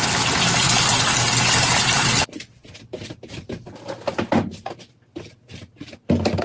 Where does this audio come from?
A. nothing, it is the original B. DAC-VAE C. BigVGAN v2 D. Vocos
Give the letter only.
A